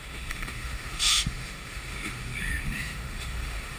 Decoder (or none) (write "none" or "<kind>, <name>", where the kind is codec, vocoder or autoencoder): autoencoder, DAC-VAE